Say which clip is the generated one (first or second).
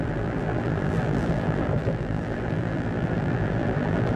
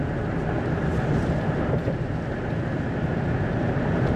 first